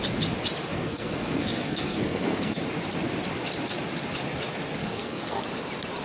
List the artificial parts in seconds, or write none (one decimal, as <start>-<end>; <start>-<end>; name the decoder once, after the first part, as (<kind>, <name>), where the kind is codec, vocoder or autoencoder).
0.7-2.6 (codec, SNAC); 4.8-5.4